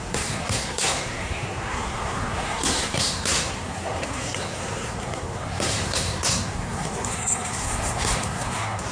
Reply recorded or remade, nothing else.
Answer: remade